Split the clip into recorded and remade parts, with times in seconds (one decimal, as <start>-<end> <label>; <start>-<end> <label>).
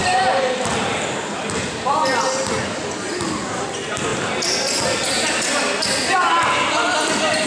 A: 0.0-7.5 recorded